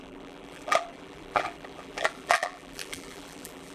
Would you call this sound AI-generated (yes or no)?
yes